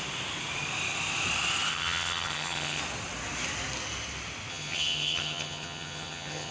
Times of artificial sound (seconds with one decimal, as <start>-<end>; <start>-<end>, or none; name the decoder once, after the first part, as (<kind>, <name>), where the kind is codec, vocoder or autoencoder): 1.7-2.8 (vocoder, HiFi-GAN); 4.5-6.5